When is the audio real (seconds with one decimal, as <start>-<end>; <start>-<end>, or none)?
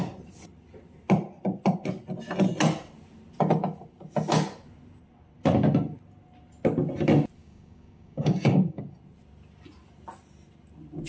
0.0-7.4; 8.8-11.1